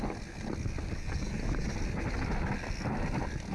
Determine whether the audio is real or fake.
real